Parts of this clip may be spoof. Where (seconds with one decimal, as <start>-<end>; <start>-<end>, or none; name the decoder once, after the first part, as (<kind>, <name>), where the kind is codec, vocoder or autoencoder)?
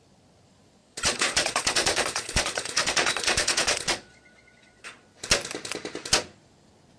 0.8-5.0 (vocoder, Vocos)